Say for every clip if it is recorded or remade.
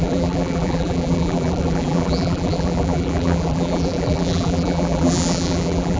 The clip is remade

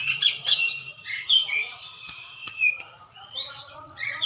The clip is remade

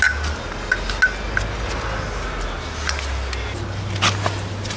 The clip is recorded